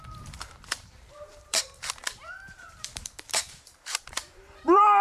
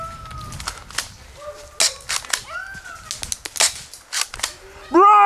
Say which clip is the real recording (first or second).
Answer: second